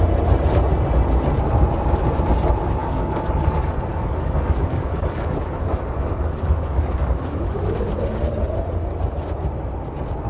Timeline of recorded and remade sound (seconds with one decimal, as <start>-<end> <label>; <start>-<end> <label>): 0.0-2.8 recorded; 2.8-7.8 remade; 7.8-10.3 recorded